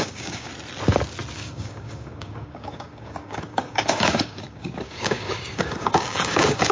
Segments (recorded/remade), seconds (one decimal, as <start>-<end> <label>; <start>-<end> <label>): 0.0-0.5 remade; 0.5-1.4 recorded; 1.4-6.7 remade